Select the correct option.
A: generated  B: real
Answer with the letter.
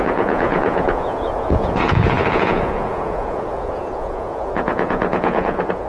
A